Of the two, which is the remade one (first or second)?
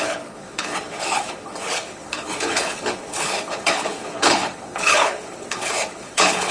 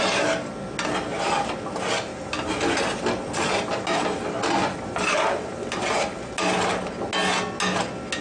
first